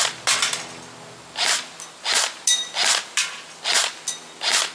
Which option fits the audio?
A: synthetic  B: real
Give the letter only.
B